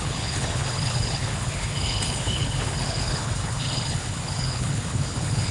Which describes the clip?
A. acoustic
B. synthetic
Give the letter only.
B